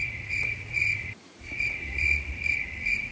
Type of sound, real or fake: fake